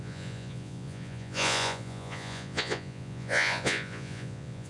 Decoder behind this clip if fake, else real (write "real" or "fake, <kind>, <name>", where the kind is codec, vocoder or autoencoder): fake, vocoder, Vocos